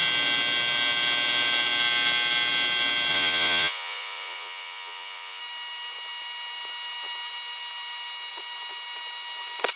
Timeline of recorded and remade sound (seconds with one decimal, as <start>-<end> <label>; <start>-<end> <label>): 0.0-3.1 recorded; 3.1-5.4 remade; 5.4-9.8 recorded